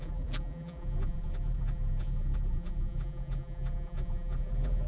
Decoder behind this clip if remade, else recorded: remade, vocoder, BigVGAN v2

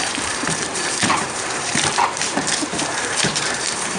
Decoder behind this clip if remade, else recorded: remade, vocoder, BigVGAN v2